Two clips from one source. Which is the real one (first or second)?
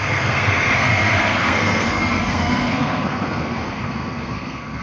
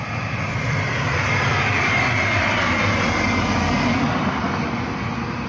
second